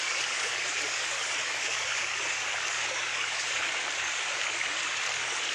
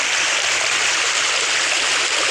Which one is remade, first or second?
first